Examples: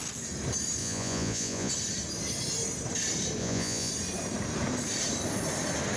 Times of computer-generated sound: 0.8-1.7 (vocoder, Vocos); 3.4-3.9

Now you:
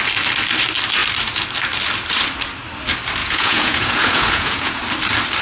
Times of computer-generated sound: 3.2-4.8 (vocoder, Vocos)

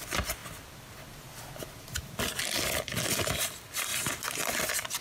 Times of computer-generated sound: none

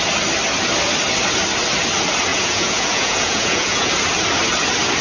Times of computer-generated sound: 2.3-3.9 (vocoder, Vocos)

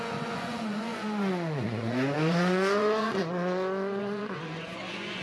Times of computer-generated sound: 0.0-5.2 (vocoder, Vocos)

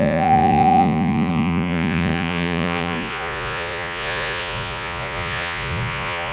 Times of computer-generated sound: 0.0-6.3 (vocoder, Vocos)

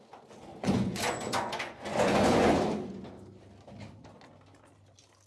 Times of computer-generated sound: 0.5-2.5 (vocoder, Vocos)

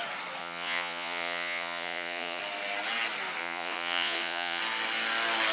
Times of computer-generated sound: 0.4-2.4 (vocoder, Vocos); 3.4-4.6